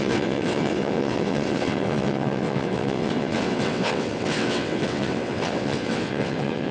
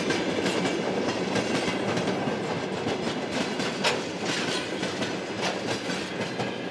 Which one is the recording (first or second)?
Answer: second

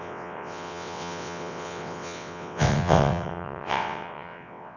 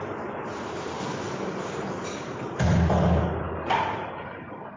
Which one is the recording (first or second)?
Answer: second